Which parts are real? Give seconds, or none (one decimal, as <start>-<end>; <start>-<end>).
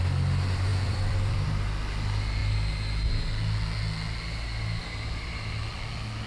0.0-0.7; 1.5-6.3